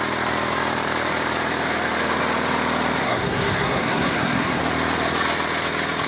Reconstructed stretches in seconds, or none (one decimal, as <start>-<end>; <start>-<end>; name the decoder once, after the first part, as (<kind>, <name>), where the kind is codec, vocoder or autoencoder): 3.0-4.6 (codec, SNAC)